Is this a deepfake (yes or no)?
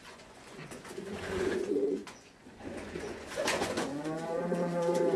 yes